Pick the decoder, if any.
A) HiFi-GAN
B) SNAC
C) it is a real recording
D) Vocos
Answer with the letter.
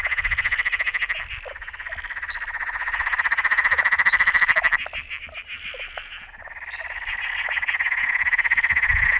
C